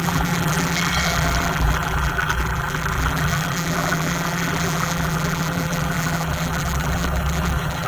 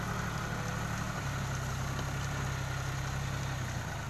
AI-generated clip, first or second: first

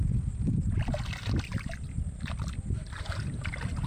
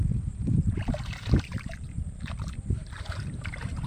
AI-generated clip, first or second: second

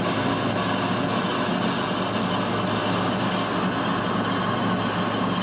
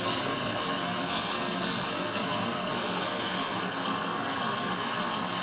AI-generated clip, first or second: second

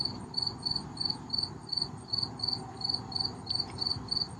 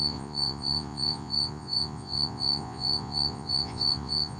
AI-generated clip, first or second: second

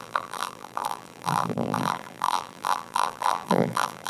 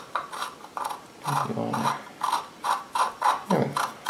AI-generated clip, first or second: first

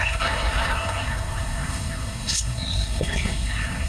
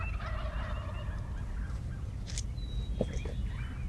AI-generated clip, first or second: first